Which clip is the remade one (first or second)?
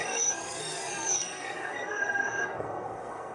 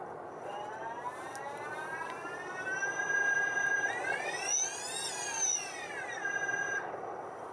first